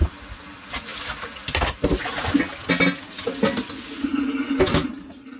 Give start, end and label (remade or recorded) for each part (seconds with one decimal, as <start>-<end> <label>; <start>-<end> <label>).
0.0-5.4 recorded